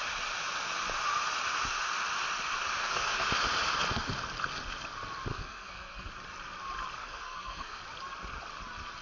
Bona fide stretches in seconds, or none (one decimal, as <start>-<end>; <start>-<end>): 0.0-2.8; 3.3-5.3; 6.1-7.0; 7.8-9.0